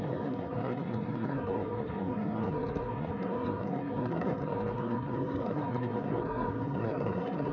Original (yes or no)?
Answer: no